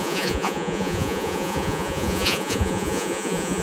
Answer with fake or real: fake